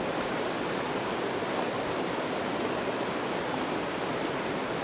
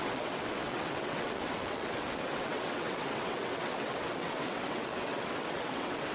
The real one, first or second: first